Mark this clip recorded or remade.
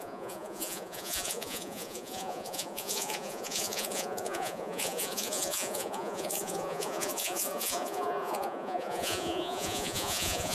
remade